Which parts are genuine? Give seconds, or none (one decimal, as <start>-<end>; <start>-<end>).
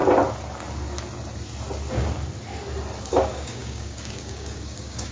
0.0-3.1